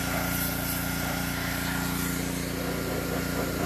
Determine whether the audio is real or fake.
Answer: real